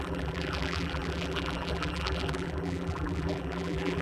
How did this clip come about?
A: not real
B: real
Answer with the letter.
A